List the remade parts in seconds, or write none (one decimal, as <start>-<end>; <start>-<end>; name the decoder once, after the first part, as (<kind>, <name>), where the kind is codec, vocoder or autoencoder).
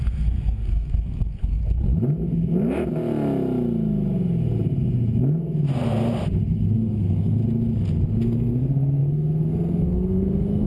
0.0-1.6 (codec, SNAC); 6.6-7.4; 8.2-10.7